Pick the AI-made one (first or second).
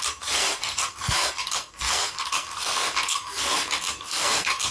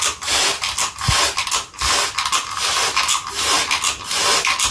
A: first